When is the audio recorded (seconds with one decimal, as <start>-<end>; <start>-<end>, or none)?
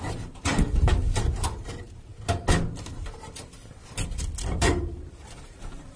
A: 2.1-4.6